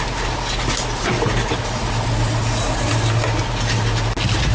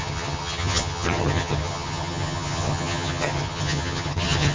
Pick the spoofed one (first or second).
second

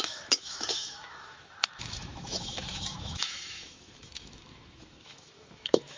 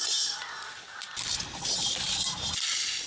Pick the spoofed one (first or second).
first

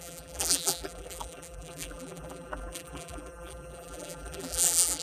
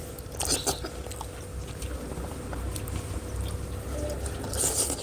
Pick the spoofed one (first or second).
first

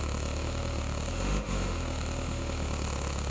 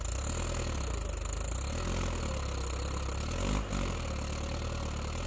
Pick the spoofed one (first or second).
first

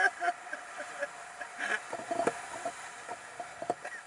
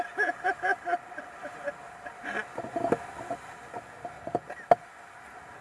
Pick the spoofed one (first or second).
first